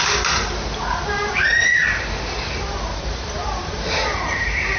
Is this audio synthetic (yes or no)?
yes